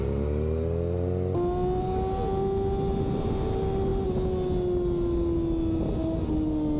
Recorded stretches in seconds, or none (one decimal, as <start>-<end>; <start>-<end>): 0.0-6.8